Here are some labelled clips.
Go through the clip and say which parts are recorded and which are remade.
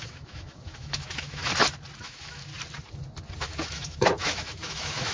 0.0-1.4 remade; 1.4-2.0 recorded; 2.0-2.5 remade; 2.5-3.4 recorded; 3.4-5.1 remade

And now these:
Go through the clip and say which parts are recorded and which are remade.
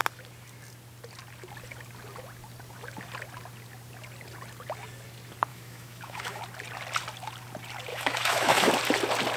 0.0-5.5 recorded; 5.5-6.4 remade; 6.4-7.9 recorded; 7.9-8.7 remade; 8.7-9.4 recorded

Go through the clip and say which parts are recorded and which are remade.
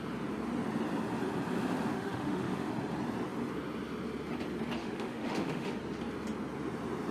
0.0-1.9 recorded; 1.9-2.7 remade; 2.7-4.8 recorded; 4.8-5.8 remade; 5.8-7.1 recorded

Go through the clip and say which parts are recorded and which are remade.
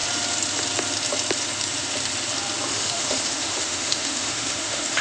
0.0-2.7 recorded; 2.7-5.0 remade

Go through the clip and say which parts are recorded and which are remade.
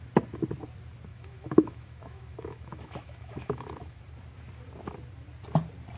0.0-1.1 recorded; 1.1-4.0 remade; 4.0-6.0 recorded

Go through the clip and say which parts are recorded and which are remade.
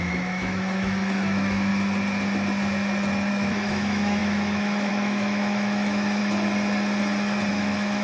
0.0-1.7 remade; 1.7-3.3 recorded; 3.3-6.2 remade; 6.2-7.5 recorded; 7.5-8.0 remade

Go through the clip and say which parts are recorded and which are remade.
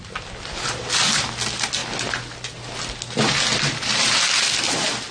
0.0-5.1 recorded